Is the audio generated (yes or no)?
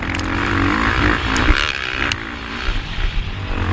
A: no